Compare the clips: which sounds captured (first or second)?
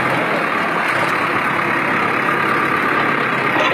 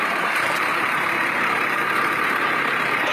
first